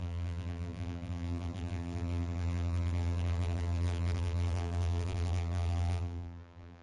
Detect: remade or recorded remade